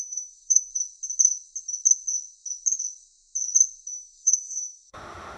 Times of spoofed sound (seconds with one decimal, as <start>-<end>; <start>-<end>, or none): 0.0-0.7; 3.9-5.4